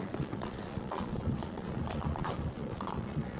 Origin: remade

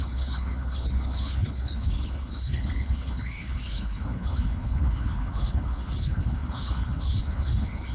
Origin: remade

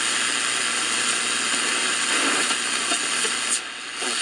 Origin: recorded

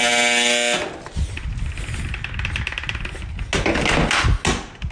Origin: recorded